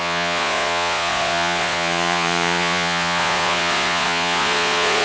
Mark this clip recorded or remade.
remade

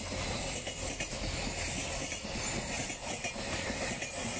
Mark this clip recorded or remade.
recorded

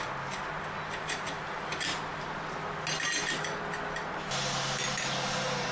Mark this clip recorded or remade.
recorded